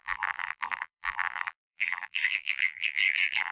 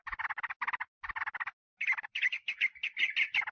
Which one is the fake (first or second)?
first